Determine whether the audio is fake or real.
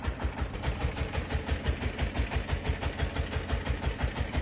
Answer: real